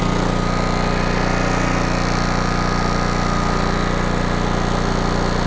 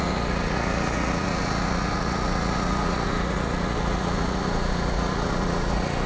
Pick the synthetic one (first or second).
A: second